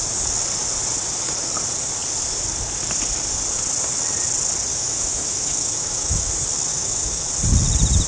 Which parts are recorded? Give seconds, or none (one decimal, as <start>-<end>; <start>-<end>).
0.0-4.7; 6.3-6.7; 7.3-8.1